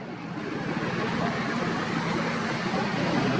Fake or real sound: real